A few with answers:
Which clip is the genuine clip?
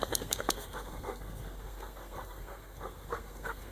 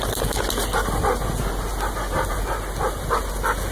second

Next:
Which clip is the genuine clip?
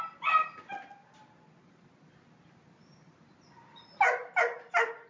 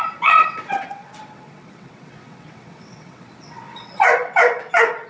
first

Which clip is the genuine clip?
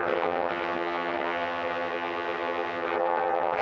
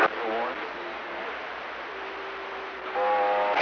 second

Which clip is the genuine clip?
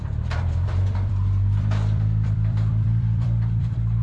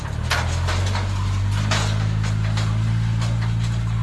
second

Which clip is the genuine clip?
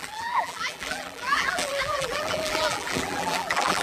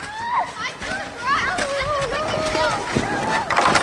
second